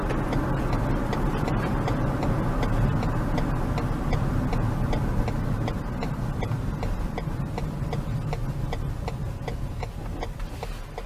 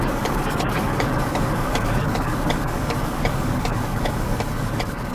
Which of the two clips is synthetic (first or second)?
second